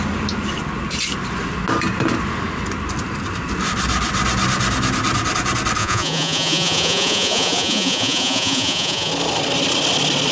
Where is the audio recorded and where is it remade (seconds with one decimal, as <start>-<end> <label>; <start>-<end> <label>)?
0.0-5.8 recorded; 5.8-9.1 remade; 9.1-10.3 recorded